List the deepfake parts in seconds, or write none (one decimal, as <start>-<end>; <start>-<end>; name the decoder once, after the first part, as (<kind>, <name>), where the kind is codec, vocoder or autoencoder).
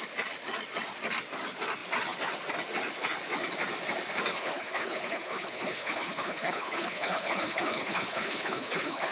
4.3-9.1 (codec, HILCodec)